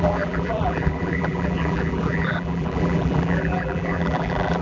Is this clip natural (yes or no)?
no